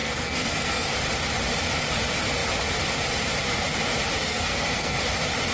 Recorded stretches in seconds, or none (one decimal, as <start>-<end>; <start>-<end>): 0.9-4.2; 5.0-5.5